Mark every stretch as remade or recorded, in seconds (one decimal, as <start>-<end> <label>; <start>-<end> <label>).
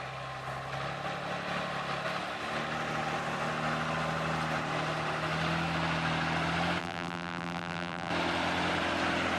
0.0-6.8 recorded; 6.8-8.1 remade; 8.1-9.4 recorded